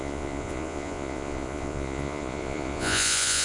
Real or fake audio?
fake